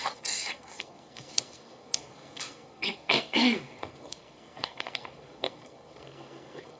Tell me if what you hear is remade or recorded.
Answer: remade